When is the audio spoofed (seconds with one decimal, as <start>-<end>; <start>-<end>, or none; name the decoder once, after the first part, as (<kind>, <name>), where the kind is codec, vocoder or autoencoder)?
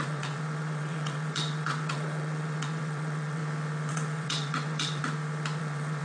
0.0-3.4 (vocoder, WaveNeXt); 3.9-5.0; 5.6-6.0